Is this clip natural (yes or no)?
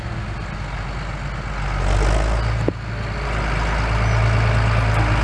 yes